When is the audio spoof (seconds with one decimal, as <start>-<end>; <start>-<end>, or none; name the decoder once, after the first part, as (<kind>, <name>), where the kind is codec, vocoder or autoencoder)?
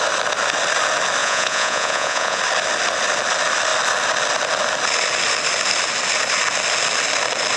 1.2-2.4 (vocoder, Vocos)